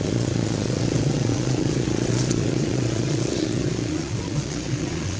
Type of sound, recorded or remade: remade